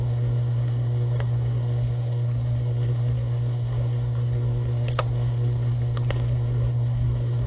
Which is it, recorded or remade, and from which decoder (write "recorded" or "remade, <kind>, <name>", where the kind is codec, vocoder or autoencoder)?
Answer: remade, codec, SNAC